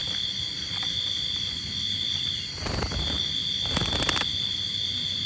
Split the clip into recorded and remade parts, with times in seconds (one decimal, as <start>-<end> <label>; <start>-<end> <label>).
0.0-5.3 recorded